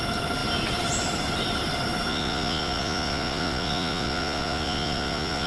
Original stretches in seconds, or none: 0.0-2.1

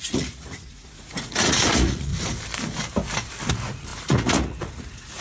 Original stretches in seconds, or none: 2.1-3.5

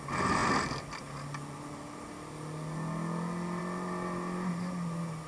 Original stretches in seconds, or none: 0.0-5.3

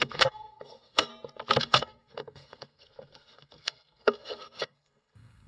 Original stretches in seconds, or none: 1.1-1.6

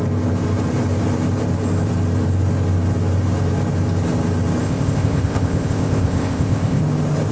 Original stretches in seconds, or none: 0.0-4.6; 6.8-7.3

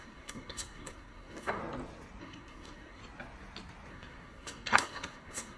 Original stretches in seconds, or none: 1.6-2.2; 3.0-3.9